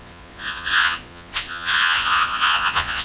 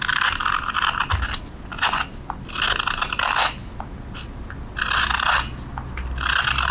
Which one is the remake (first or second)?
first